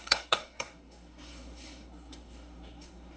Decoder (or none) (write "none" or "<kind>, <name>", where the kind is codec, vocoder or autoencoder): codec, SNAC